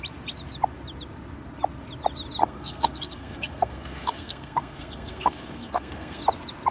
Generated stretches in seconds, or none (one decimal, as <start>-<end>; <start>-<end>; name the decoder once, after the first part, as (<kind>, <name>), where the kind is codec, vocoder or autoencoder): 2.4-6.2 (codec, SNAC)